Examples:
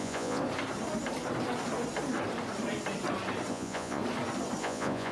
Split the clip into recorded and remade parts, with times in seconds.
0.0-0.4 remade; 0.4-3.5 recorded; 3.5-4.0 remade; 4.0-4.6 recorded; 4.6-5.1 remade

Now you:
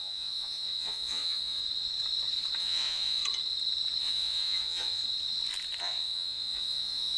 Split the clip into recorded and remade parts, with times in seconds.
0.0-1.6 remade; 1.6-2.6 recorded; 2.6-3.2 remade; 3.2-4.0 recorded; 4.0-5.0 remade; 5.0-5.8 recorded; 5.8-7.2 remade

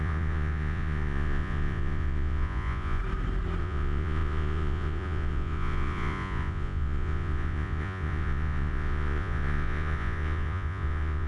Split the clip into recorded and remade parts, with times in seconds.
0.0-3.0 remade; 3.0-3.6 recorded; 3.6-11.3 remade

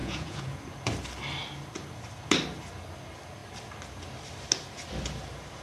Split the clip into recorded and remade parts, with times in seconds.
0.0-0.6 remade; 0.6-5.6 recorded